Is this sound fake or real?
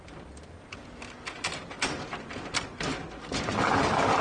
fake